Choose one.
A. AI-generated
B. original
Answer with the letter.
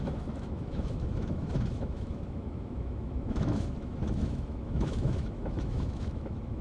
A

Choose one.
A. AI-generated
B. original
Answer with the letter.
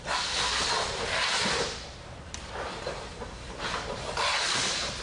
B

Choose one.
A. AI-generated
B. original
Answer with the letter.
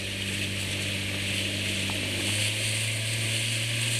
B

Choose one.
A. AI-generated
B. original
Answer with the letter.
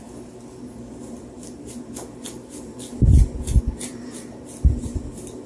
B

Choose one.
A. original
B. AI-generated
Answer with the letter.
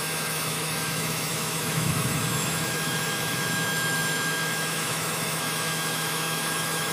B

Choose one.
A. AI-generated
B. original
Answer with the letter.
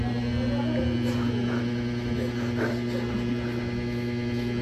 B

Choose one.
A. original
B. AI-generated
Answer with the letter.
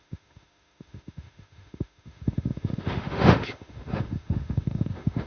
B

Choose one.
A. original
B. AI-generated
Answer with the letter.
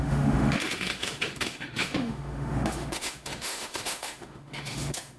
B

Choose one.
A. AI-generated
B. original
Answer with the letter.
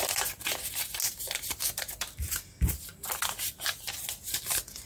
B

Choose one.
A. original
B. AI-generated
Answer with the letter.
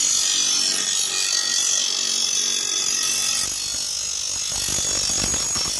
A